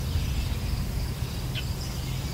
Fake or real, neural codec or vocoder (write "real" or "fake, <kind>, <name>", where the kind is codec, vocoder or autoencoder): real